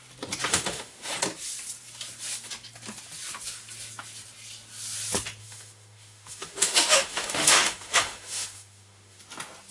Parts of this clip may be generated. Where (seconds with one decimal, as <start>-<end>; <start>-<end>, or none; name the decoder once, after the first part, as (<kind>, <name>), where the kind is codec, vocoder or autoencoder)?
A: 0.5-1.1 (autoencoder, DAC-VAE); 5.4-9.2